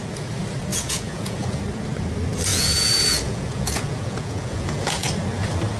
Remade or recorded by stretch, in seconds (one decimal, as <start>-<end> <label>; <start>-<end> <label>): 0.0-0.7 recorded; 0.7-1.6 remade; 1.6-2.5 recorded; 2.5-5.1 remade; 5.1-5.8 recorded